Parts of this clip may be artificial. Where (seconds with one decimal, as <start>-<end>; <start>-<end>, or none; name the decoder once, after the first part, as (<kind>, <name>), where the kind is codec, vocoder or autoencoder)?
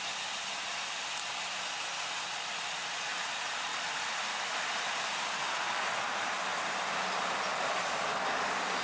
6.5-7.1 (vocoder, BigVGAN v2)